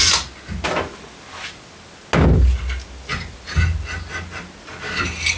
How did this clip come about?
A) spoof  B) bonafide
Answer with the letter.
B